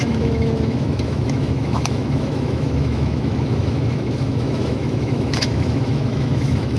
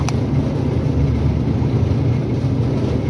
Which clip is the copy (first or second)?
first